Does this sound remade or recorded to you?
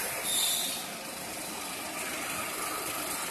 recorded